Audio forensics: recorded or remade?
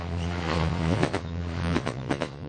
remade